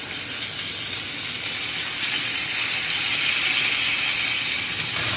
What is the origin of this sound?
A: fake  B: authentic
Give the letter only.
B